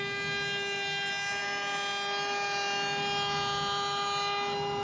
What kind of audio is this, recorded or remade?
recorded